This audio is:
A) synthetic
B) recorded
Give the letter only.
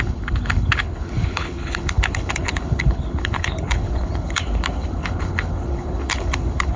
A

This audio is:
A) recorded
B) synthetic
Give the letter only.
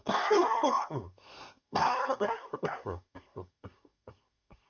B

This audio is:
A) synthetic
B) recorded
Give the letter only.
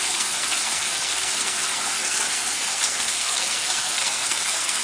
A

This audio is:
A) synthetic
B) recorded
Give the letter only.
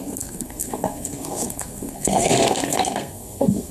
A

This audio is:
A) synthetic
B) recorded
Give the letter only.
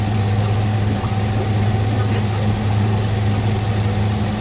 B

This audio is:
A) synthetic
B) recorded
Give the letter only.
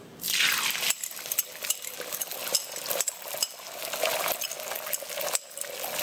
B